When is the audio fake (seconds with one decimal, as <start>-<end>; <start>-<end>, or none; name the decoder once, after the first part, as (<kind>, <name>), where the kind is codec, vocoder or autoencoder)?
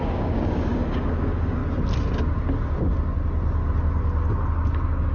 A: 0.0-1.6 (codec, DAC)